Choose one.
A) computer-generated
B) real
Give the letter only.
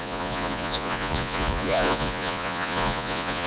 A